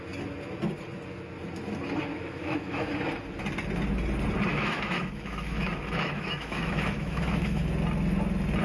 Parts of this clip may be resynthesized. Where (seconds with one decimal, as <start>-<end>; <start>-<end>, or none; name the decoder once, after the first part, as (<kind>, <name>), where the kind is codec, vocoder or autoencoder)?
2.1-2.9 (autoencoder, DAC-VAE); 4.5-7.6